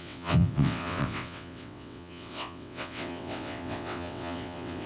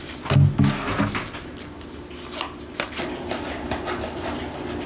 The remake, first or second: first